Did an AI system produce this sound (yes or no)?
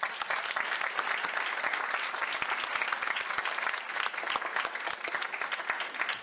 no